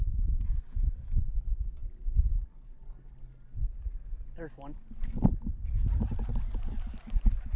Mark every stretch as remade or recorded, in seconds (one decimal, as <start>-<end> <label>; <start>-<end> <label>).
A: 0.0-7.6 recorded